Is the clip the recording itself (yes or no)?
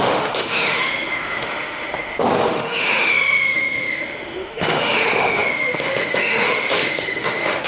no